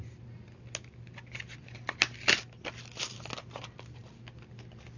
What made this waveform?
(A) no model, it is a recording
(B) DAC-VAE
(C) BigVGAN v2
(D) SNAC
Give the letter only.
A